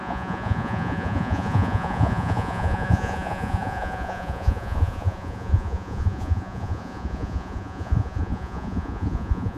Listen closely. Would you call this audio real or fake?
fake